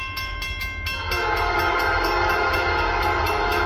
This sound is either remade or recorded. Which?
recorded